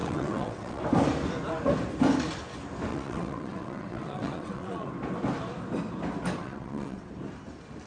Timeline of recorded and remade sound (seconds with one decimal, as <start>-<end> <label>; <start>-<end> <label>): 0.0-0.8 remade; 0.8-2.9 recorded; 2.9-4.9 remade; 4.9-6.4 recorded; 6.4-7.1 remade; 7.1-7.9 recorded